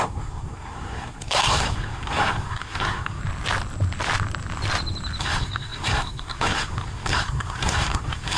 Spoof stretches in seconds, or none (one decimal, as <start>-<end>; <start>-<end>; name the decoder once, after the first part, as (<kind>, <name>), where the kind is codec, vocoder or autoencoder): 0.0-3.2 (codec, SNAC); 5.2-8.4